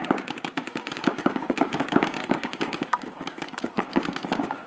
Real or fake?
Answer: fake